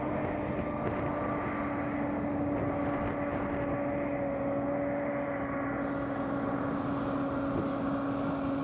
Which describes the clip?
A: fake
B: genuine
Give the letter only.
B